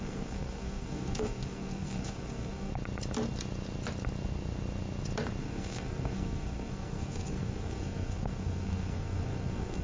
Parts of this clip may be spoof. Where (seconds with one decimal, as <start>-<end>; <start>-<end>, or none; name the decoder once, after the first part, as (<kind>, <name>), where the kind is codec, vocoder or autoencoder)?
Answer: 0.0-2.7 (codec, SNAC); 5.4-9.8